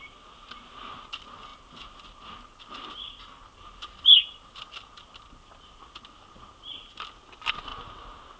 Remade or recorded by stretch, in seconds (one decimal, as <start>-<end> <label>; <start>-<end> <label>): 0.0-8.4 recorded